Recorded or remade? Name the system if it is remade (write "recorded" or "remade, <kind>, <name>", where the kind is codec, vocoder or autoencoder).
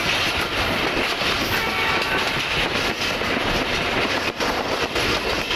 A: recorded